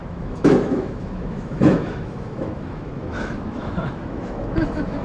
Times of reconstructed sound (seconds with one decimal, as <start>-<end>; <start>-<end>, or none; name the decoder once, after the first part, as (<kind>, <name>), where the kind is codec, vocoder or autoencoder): 0.0-5.0 (autoencoder, DAC-VAE)